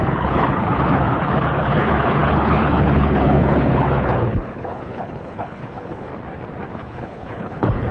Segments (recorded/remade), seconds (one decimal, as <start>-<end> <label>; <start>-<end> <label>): 0.0-6.1 remade; 6.1-6.7 recorded; 6.7-7.9 remade